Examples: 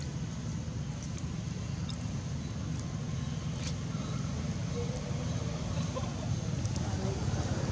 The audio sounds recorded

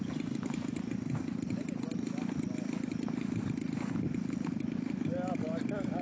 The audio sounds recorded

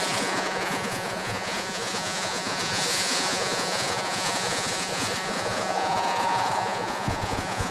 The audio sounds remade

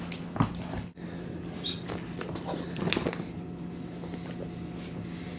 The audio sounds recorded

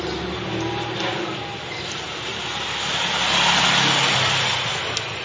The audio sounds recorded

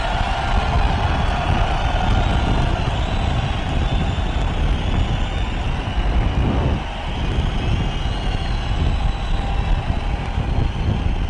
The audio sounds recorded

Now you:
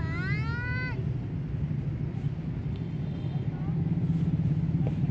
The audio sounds recorded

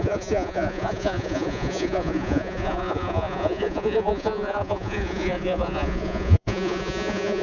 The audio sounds remade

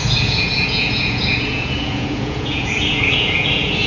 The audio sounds remade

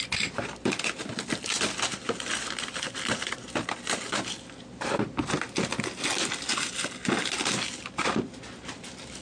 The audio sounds recorded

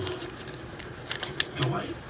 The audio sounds recorded